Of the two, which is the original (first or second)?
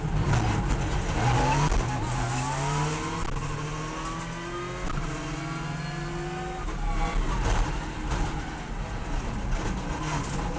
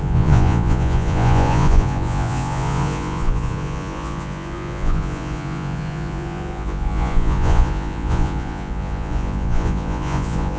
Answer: first